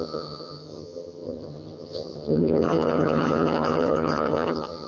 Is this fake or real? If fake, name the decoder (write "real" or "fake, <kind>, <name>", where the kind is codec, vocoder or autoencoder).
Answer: fake, vocoder, HiFi-GAN